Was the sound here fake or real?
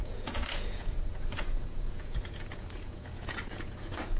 fake